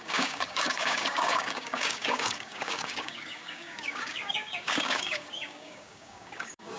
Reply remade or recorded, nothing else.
remade